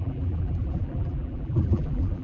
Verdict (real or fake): fake